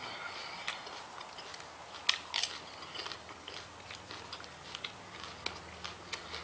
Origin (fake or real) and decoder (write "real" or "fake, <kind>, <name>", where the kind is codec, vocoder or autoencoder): real